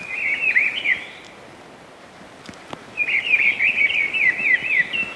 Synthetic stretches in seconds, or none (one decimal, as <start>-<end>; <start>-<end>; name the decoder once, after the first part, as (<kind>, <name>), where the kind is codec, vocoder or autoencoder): none